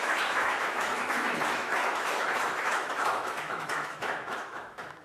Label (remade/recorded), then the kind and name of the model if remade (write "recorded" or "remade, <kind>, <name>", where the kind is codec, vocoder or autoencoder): remade, autoencoder, DAC-VAE